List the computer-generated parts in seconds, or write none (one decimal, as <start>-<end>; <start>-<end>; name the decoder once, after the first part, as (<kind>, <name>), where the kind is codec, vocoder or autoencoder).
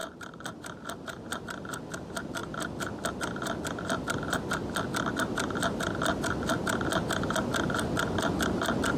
0.0-1.4 (vocoder, BigVGAN v2)